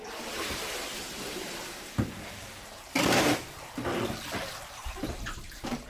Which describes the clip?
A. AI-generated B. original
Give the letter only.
A